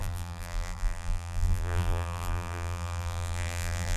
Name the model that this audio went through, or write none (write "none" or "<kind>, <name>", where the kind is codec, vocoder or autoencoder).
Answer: vocoder, BigVGAN v2